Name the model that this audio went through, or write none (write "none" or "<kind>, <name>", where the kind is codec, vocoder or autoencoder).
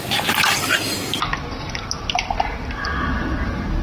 none